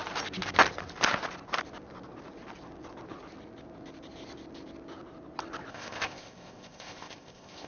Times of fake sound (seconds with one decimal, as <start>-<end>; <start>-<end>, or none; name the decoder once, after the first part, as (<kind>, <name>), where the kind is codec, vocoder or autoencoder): 5.7-7.7 (codec, ZipCodec)